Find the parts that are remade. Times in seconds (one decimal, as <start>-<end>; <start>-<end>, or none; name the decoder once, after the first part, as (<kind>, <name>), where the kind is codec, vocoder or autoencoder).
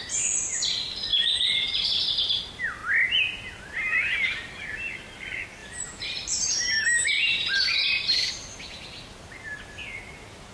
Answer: 5.6-8.3 (vocoder, BigVGAN v2)